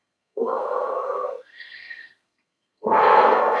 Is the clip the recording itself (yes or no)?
no